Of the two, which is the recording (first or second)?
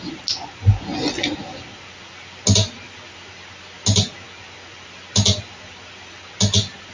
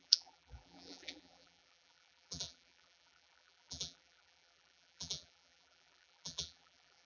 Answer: first